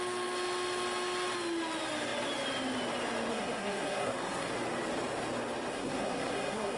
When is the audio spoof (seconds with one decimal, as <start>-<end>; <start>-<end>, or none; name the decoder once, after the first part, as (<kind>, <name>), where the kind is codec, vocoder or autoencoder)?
3.3-4.5 (codec, SNAC); 5.7-6.8

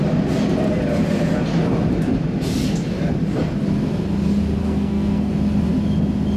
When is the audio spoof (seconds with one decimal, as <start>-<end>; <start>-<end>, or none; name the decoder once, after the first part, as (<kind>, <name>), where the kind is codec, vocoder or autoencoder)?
4.6-5.3 (codec, SNAC)

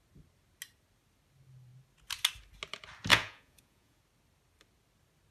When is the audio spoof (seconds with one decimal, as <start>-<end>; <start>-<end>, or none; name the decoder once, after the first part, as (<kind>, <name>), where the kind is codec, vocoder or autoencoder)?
3.1-4.0 (vocoder, Vocos)

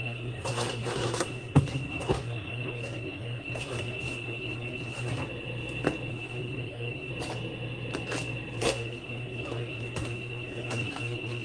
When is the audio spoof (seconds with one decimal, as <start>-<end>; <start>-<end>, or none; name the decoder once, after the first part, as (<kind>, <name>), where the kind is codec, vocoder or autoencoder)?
0.0-5.2 (codec, SNAC); 6.1-7.1; 8.6-11.4

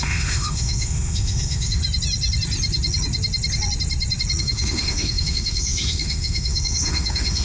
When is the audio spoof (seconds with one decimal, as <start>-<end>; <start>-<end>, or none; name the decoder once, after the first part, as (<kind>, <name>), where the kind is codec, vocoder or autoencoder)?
0.0-1.8 (autoencoder, DAC-VAE); 4.4-7.4

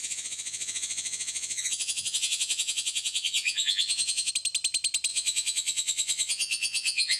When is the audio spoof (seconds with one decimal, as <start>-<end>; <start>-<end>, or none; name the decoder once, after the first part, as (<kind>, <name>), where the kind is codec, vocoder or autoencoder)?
0.0-4.3 (vocoder, Vocos); 5.1-7.2

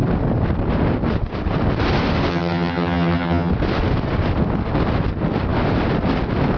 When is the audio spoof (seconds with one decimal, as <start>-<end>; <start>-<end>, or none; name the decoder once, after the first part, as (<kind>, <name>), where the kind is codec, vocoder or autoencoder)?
2.3-3.5 (vocoder, HiFi-GAN)

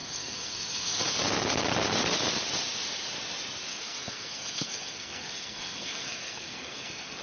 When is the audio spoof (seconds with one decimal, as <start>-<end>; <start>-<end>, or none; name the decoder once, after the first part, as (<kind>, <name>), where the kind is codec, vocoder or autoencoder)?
0.0-1.0 (codec, SNAC); 3.7-7.2